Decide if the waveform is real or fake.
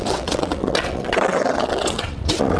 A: fake